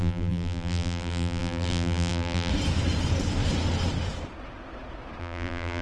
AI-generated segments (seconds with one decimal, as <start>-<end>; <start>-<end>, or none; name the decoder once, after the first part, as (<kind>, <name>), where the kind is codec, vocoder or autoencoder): 0.0-2.5 (vocoder, BigVGAN v2); 5.2-5.8